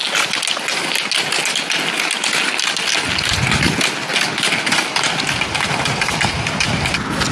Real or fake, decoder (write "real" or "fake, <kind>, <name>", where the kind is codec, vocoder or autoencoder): real